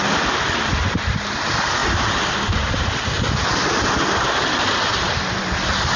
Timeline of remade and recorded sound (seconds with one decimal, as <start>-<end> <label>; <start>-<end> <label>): 0.0-4.9 recorded; 4.9-5.6 remade; 5.6-6.0 recorded